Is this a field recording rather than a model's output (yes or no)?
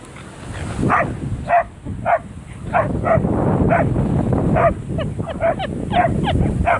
yes